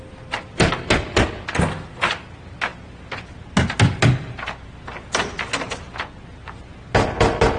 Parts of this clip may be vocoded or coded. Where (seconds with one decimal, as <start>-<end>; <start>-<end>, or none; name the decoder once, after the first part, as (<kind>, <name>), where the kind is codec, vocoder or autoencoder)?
none